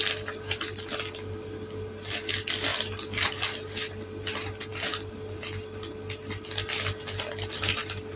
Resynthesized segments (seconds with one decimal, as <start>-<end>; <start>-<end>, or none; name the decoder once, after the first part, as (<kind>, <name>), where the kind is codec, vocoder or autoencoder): none